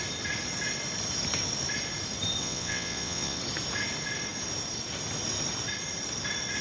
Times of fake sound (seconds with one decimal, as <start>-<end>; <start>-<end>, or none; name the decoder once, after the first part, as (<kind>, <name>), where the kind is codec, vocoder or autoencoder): 2.4-3.4 (vocoder, WaveNeXt)